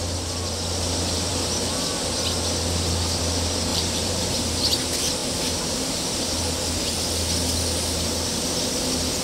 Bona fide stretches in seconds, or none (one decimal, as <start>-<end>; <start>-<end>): 0.0-3.7; 4.7-5.2; 6.1-9.2